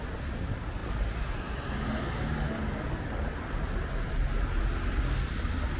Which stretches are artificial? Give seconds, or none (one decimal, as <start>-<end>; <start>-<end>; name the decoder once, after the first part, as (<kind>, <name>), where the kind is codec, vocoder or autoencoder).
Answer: none

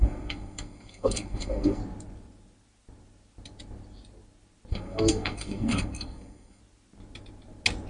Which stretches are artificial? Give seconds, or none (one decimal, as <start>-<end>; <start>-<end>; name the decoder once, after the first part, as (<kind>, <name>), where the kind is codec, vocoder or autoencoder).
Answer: 0.0-1.8 (codec, SNAC); 4.7-6.6